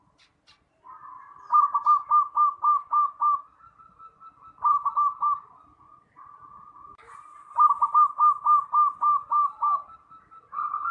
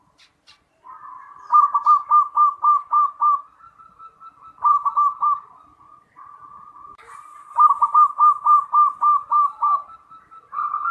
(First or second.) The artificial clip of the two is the second